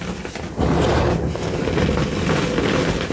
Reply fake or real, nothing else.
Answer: real